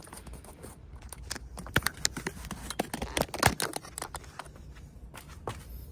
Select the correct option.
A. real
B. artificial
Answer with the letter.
A